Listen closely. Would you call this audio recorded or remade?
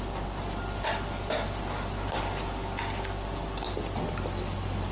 recorded